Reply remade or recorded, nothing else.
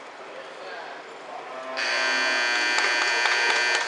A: recorded